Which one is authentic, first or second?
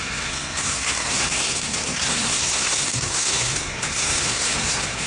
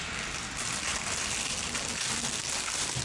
second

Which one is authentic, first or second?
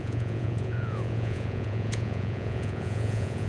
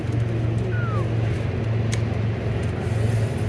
second